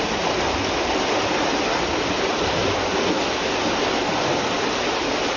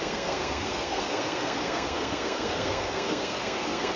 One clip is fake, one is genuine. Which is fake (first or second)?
second